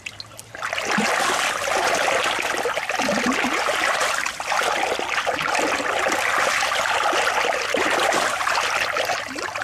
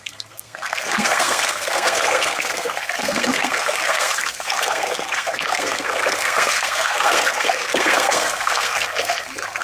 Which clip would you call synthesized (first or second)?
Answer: second